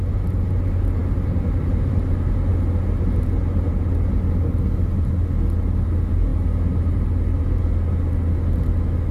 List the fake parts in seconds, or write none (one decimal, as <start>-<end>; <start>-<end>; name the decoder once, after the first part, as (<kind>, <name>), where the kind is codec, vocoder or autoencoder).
none